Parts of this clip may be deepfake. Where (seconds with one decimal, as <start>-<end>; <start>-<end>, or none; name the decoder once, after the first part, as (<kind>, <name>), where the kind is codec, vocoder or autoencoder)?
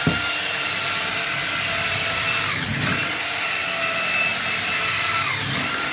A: none